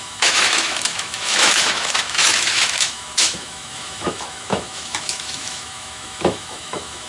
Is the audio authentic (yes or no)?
no